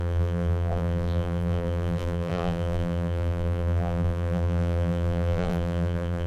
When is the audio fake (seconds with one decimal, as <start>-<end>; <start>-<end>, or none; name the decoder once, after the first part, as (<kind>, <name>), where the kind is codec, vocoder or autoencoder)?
0.0-6.3 (vocoder, BigVGAN v2)